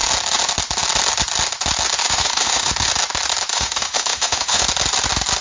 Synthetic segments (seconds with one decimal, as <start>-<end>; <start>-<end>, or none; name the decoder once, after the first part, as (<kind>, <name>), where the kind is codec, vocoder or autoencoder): 2.0-2.7 (autoencoder, DAC-VAE); 3.5-4.6

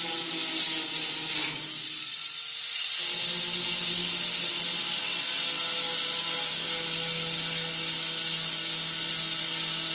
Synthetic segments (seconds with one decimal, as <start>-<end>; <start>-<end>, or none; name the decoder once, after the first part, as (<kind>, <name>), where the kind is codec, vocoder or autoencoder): none

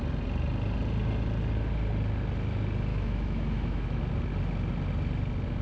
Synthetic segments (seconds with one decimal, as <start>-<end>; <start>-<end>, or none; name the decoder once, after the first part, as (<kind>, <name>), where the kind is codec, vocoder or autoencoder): 2.9-4.0 (autoencoder, DAC-VAE)

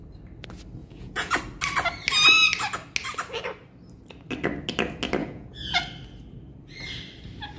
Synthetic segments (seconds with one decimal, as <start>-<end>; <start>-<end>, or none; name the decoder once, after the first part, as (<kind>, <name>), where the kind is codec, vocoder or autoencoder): 0.8-1.4 (vocoder, Vocos); 5.2-5.8

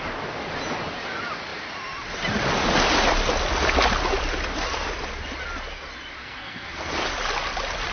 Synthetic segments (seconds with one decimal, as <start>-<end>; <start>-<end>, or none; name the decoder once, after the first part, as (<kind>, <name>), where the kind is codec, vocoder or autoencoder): 6.2-6.9 (codec, SNAC)

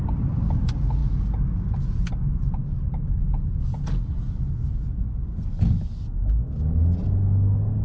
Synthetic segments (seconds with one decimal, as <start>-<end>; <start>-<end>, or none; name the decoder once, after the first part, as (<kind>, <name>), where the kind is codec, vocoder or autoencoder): none